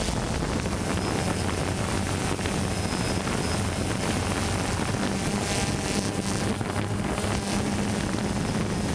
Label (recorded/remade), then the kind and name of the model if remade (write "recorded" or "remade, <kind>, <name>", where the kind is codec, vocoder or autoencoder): recorded